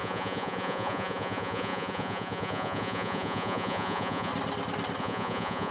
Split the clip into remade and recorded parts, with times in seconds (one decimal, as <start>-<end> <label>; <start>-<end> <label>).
0.0-4.3 remade; 4.3-5.0 recorded; 5.0-5.7 remade